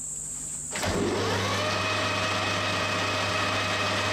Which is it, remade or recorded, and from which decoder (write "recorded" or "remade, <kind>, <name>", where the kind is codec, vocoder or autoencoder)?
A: recorded